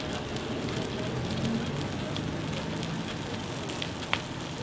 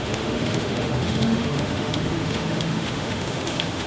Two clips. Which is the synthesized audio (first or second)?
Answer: second